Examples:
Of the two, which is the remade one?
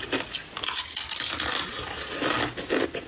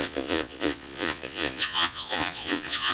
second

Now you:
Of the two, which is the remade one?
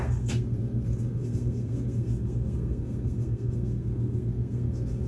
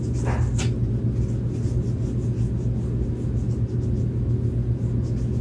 first